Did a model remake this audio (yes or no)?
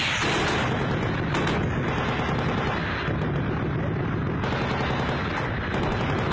no